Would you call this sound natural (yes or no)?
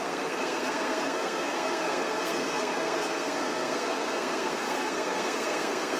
no